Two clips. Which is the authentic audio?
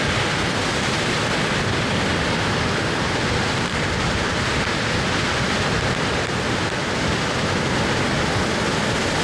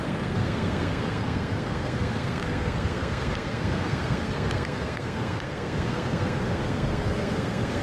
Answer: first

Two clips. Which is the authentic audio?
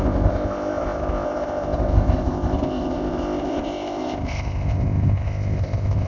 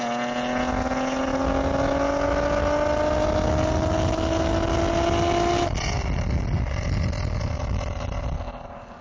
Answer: second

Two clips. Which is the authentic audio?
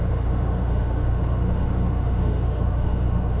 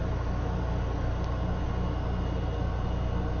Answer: second